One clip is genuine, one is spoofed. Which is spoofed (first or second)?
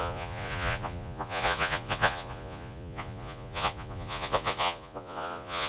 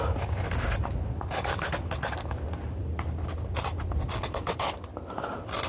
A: first